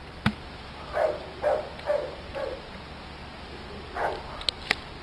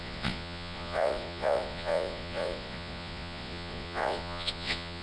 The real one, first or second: first